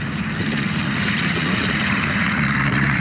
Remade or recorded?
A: remade